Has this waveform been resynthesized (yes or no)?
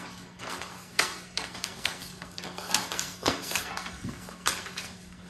yes